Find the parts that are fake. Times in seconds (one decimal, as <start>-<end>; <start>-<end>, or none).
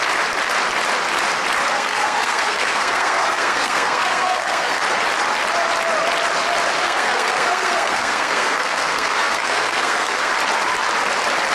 1.6-4.8; 6.8-10.3